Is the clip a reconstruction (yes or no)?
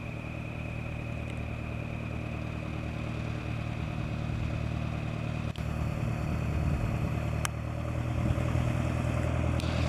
no